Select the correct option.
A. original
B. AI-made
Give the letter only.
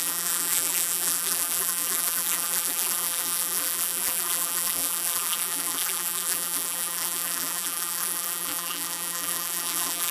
B